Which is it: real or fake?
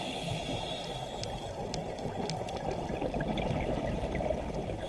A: real